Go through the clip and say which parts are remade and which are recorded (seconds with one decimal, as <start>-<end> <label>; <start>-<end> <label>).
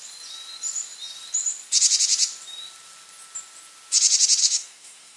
0.0-4.4 recorded; 4.4-5.2 remade